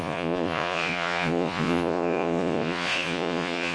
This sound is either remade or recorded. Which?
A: remade